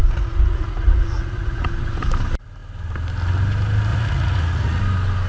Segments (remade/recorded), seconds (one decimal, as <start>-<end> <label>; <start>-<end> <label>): 0.0-1.7 remade; 1.7-3.9 recorded; 3.9-4.8 remade; 4.8-5.3 recorded